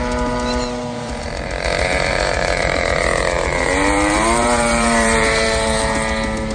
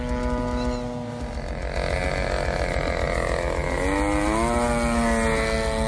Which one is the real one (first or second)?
second